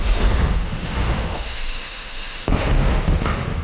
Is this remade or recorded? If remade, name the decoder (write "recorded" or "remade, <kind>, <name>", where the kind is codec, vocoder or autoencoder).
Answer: remade, autoencoder, DAC-VAE